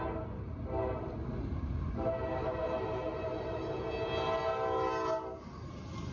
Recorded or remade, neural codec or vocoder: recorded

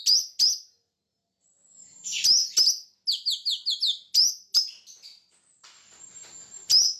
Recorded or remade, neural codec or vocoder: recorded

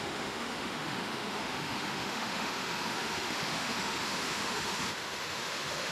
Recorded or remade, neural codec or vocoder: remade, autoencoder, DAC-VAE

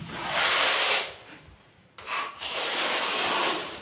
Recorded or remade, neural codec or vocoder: remade, vocoder, BigVGAN v2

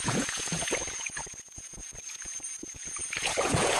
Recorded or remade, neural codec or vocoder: remade, vocoder, Vocos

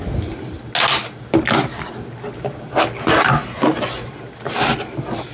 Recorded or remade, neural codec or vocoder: recorded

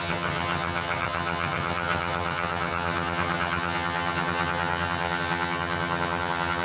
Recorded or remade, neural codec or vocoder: remade, vocoder, HiFi-GAN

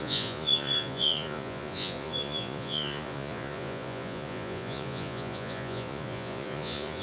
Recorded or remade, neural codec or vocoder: remade, vocoder, Vocos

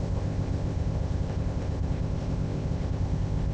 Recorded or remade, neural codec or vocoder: remade, codec, ZipCodec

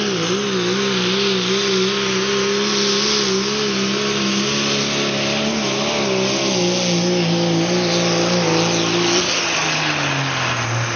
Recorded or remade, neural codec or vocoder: recorded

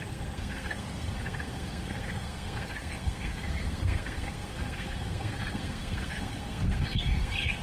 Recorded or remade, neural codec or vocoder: remade, codec, SNAC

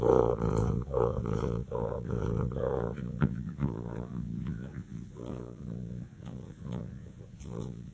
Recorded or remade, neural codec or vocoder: remade, vocoder, Vocos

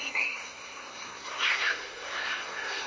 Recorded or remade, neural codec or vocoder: remade, codec, SNAC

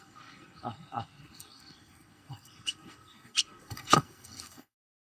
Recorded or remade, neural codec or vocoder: remade, codec, SNAC